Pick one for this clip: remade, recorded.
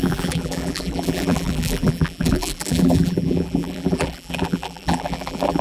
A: remade